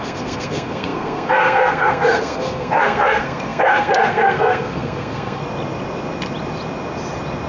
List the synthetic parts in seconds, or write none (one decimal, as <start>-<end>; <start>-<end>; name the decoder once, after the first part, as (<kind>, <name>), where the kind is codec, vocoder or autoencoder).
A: 0.0-5.4 (codec, SNAC)